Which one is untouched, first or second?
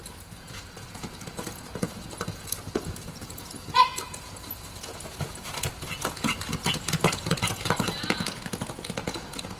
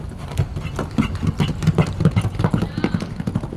second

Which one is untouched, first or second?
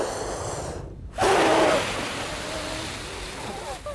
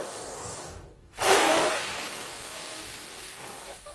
first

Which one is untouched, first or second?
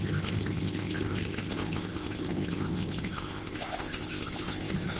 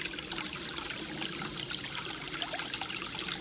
second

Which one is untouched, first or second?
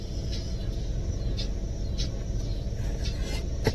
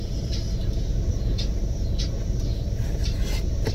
first